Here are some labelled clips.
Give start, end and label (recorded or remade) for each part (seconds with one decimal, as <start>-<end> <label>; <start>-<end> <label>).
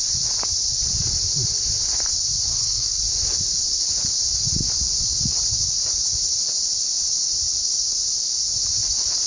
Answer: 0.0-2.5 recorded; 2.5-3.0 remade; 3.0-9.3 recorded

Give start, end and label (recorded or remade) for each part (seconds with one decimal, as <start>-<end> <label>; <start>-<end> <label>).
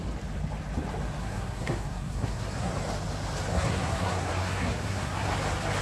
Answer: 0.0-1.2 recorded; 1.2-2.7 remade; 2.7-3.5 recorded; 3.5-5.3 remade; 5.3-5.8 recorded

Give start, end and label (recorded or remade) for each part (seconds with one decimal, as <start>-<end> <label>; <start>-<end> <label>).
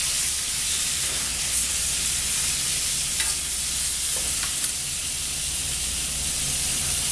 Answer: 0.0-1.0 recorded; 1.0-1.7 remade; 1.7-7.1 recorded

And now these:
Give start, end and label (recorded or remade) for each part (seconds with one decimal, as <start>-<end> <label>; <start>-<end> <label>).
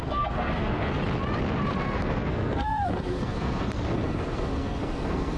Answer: 0.0-1.0 remade; 1.0-1.8 recorded; 1.8-5.4 remade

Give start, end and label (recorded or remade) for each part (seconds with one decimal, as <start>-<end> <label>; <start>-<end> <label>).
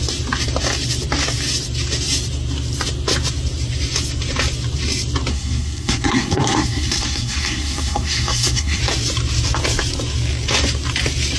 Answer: 0.0-5.3 recorded; 5.3-8.8 remade; 8.8-11.4 recorded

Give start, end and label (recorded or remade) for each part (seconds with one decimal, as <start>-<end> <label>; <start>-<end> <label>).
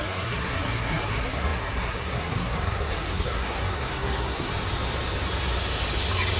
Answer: 0.0-4.5 remade; 4.5-6.4 recorded